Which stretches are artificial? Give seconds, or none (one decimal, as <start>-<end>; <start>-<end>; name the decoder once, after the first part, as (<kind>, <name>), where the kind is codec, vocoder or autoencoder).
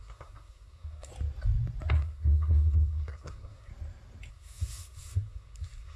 0.0-1.1 (codec, SNAC); 1.9-3.7; 4.3-6.0